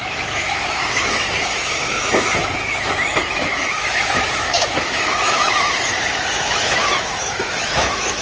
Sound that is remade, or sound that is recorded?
remade